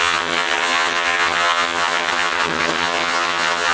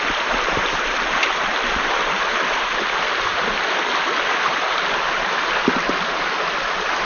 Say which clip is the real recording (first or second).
second